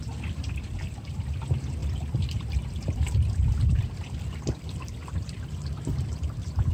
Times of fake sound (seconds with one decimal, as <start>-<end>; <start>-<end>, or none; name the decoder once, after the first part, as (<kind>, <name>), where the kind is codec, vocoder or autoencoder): 0.0-6.7 (vocoder, BigVGAN v2)